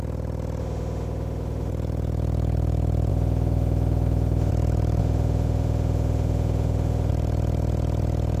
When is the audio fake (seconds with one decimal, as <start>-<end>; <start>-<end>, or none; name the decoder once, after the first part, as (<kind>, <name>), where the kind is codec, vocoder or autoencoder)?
0.6-1.7 (autoencoder, DAC-VAE); 3.1-4.5; 5.0-7.1